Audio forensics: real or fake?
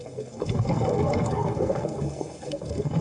fake